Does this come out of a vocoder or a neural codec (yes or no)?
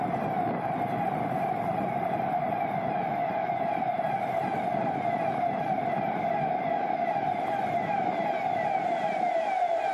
no